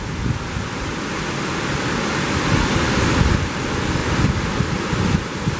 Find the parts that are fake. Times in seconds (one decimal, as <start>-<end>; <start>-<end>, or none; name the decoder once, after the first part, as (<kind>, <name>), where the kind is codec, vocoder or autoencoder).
none

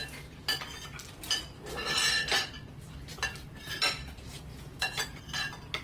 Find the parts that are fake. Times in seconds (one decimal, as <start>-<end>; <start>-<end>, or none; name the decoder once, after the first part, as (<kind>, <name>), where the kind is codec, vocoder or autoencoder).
4.5-5.2 (vocoder, Vocos)

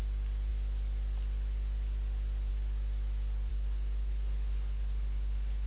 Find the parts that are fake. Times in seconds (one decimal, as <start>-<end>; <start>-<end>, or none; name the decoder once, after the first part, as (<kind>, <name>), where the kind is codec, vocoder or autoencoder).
3.5-5.7 (codec, HILCodec)

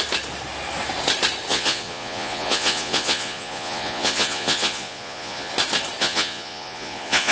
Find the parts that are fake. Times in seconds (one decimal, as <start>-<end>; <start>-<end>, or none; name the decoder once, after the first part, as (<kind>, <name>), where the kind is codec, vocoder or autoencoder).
1.5-5.5 (vocoder, Vocos); 6.0-7.3

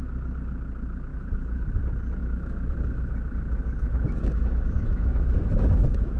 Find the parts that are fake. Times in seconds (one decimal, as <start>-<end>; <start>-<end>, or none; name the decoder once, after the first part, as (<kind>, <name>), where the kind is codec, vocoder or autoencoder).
1.1-1.8 (autoencoder, DAC-VAE); 2.2-6.2

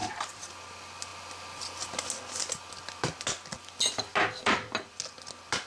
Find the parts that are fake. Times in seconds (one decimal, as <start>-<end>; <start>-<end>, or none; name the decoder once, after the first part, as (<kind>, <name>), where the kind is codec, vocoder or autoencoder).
0.0-0.5 (vocoder, BigVGAN v2)

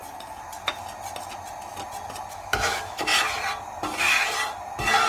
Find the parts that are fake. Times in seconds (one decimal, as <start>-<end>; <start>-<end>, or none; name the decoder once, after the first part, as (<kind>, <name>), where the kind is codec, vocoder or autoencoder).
2.3-3.1 (autoencoder, DAC-VAE)